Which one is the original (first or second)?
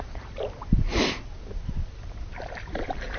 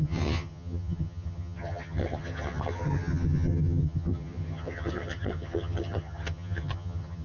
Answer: first